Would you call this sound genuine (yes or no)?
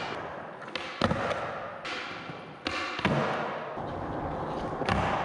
yes